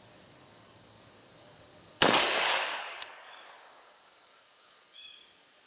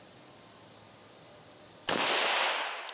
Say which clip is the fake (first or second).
first